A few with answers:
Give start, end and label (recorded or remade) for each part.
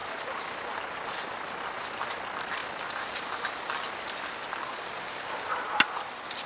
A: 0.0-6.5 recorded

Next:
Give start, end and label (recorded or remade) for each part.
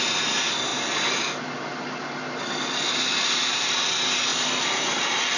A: 0.0-5.4 recorded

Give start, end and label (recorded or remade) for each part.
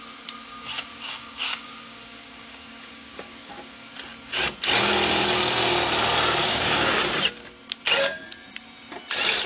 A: 0.0-0.9 recorded; 0.9-3.9 remade; 3.9-6.4 recorded; 6.4-7.0 remade; 7.0-9.5 recorded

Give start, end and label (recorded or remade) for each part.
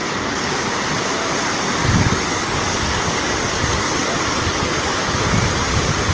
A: 0.0-0.7 remade; 0.7-1.8 recorded; 1.8-5.2 remade; 5.2-6.1 recorded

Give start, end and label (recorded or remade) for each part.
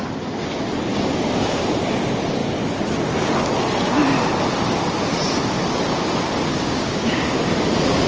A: 0.0-0.9 recorded; 0.9-1.8 remade; 1.8-6.5 recorded; 6.5-7.4 remade; 7.4-8.1 recorded